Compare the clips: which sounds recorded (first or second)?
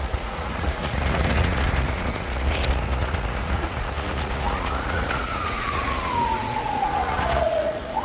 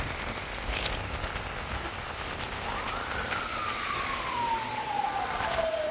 second